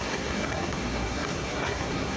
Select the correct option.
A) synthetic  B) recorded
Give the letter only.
A